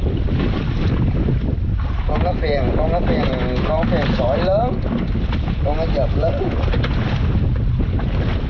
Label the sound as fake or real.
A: real